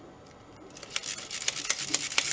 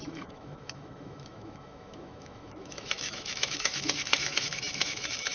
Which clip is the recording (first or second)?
first